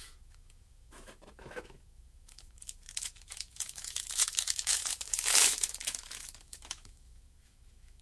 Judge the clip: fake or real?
fake